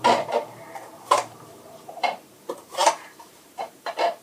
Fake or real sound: fake